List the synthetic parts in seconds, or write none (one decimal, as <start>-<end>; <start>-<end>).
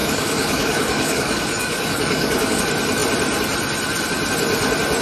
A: 0.0-2.6